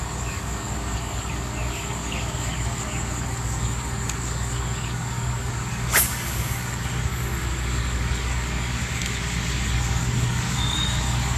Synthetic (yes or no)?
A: yes